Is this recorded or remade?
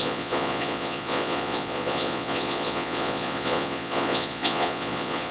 remade